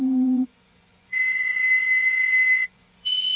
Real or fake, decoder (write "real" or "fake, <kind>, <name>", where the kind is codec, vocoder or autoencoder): fake, vocoder, Vocos